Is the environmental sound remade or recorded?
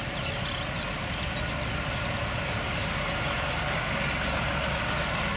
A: recorded